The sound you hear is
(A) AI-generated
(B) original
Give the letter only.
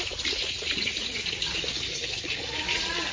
A